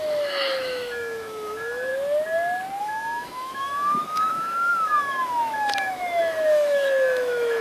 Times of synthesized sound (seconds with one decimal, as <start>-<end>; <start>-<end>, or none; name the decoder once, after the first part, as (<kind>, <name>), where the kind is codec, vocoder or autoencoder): 0.0-1.9 (autoencoder, DAC-VAE); 2.8-7.6